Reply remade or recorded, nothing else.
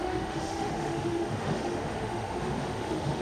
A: remade